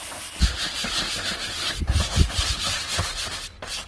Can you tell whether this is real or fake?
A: real